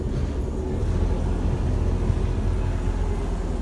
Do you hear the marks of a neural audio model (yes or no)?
no